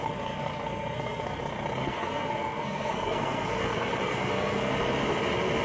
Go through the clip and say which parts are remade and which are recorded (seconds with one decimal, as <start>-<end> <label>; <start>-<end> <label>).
0.0-1.4 remade; 1.4-1.8 recorded; 1.8-4.7 remade; 4.7-5.6 recorded